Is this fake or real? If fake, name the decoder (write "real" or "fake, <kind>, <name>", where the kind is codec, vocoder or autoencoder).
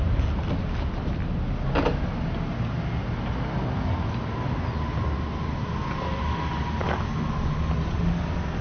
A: real